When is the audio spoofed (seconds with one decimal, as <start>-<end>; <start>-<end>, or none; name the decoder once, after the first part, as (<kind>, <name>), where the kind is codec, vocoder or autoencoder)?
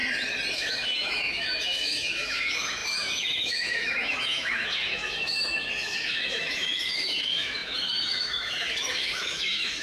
0.5-9.8 (autoencoder, DAC-VAE)